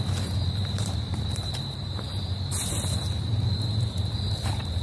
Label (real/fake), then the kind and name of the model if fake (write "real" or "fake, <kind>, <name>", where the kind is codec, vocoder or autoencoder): fake, vocoder, BigVGAN v2